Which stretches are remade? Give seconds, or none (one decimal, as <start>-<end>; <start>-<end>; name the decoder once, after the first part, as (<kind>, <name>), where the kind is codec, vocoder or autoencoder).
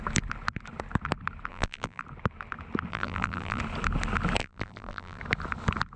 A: 1.5-2.0 (vocoder, BigVGAN v2); 2.9-3.6; 4.4-5.2